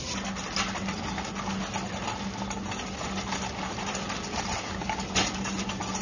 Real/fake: real